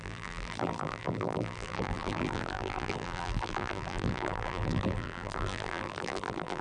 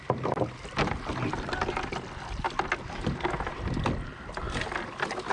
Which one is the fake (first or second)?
first